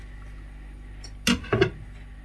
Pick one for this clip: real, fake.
real